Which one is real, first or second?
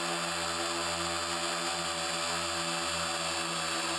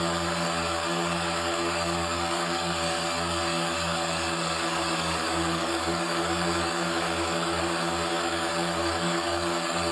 first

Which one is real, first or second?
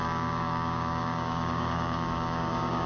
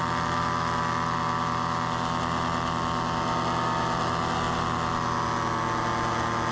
second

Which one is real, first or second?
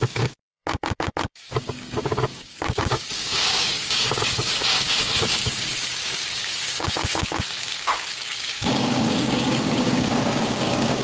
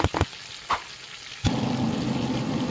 second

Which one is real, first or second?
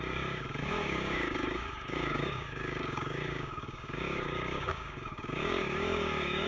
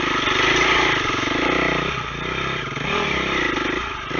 second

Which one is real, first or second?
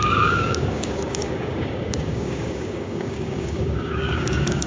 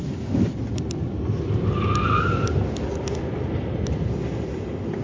second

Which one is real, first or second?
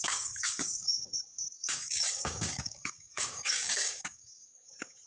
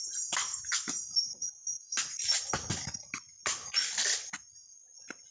second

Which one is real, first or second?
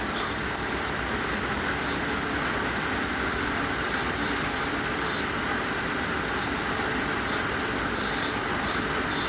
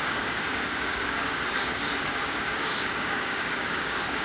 first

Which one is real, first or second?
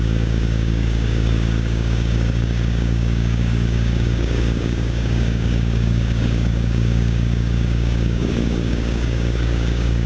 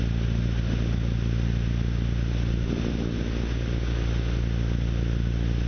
second